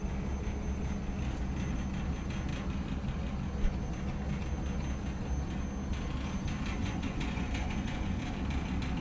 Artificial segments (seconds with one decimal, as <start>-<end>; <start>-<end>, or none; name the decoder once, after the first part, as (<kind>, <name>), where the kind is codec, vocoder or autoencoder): 6.8-8.2 (vocoder, Vocos)